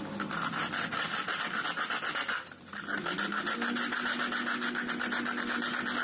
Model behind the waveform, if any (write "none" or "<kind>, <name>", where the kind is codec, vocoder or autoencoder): none